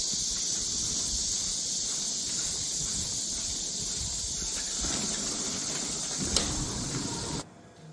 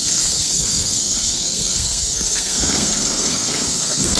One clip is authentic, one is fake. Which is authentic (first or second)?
first